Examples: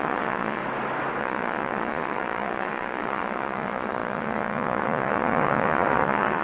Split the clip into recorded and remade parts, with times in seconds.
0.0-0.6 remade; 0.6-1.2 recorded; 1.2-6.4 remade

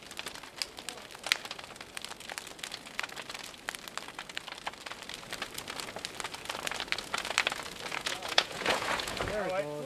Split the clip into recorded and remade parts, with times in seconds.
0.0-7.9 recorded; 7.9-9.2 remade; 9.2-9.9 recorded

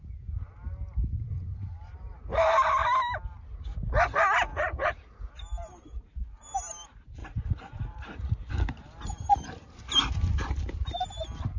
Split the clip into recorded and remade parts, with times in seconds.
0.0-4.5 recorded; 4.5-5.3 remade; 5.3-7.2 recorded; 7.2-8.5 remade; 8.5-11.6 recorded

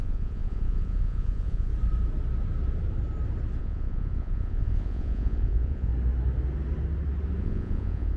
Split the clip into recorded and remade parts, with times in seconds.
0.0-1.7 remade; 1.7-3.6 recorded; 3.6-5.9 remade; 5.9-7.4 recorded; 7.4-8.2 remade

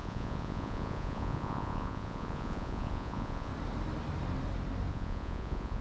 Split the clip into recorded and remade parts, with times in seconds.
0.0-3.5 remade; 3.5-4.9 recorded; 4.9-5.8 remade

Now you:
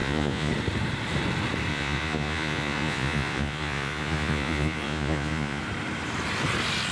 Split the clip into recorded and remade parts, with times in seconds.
0.0-0.5 remade; 0.5-1.7 recorded; 1.7-5.6 remade; 5.6-6.9 recorded